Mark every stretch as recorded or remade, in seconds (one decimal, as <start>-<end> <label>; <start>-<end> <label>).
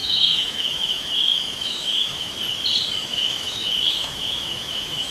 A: 0.0-2.3 remade; 2.3-3.0 recorded; 3.0-5.1 remade